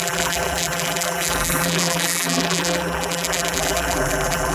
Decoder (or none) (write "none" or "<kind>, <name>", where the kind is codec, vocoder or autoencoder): vocoder, BigVGAN v2